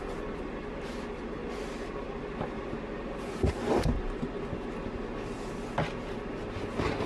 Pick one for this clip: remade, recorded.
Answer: recorded